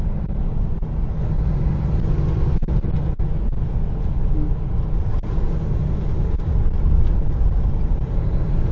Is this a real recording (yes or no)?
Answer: yes